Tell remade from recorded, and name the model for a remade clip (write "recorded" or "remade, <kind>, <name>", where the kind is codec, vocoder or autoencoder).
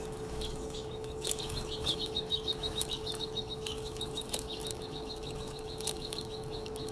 remade, codec, DAC